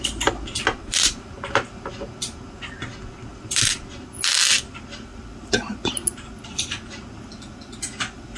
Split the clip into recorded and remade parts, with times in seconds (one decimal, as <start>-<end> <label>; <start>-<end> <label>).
0.0-0.8 recorded; 0.8-1.9 remade; 1.9-3.3 recorded; 3.3-3.9 remade; 3.9-5.1 recorded; 5.1-5.9 remade; 5.9-8.4 recorded